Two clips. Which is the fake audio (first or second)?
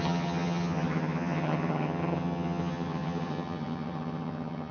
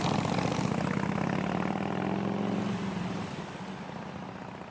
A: first